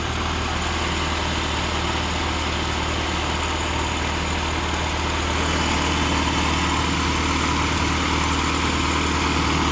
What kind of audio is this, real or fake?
real